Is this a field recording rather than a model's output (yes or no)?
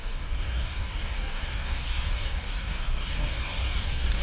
no